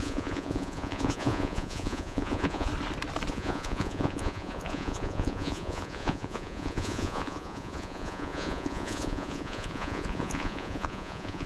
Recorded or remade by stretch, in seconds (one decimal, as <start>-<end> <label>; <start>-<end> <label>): 0.0-2.7 remade; 2.7-3.3 recorded; 3.3-11.5 remade